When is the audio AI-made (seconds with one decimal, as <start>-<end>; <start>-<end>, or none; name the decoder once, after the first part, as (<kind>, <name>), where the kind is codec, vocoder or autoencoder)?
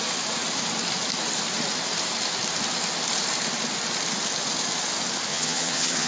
5.3-6.1 (vocoder, HiFi-GAN)